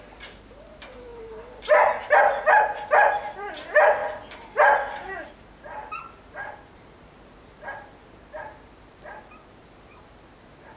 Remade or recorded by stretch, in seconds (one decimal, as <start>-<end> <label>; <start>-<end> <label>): 0.0-10.8 recorded